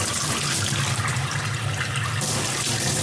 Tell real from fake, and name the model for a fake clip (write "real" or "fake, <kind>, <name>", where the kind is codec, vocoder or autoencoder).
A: real